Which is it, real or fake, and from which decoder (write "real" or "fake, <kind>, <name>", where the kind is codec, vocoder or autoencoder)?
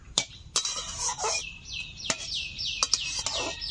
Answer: real